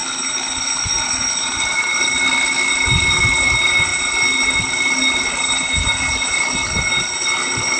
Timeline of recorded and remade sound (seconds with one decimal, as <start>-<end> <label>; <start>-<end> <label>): 0.0-7.8 recorded